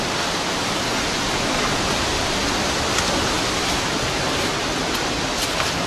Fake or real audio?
real